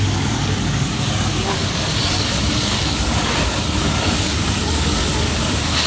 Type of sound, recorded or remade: remade